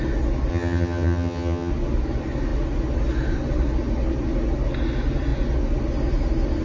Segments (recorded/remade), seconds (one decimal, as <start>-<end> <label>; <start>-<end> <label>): 0.0-0.5 recorded; 0.5-1.7 remade; 1.7-6.6 recorded